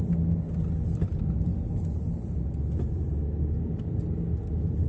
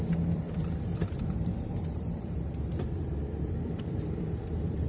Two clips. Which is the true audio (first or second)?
first